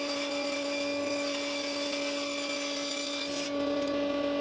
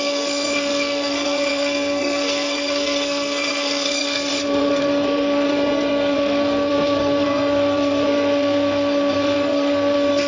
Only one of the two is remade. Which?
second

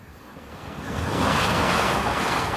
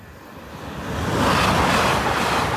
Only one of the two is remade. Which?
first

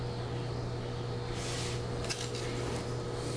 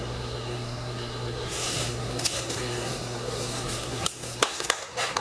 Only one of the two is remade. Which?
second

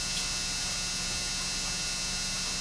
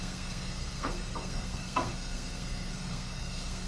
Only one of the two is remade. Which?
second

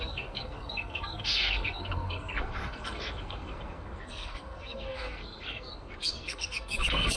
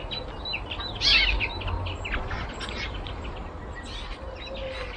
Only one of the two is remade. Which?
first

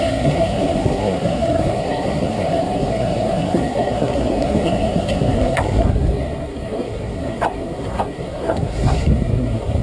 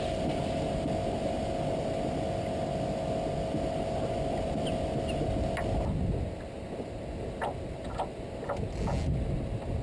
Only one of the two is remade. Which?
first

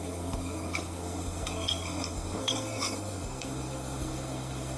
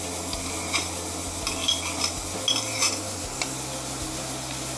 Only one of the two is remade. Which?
first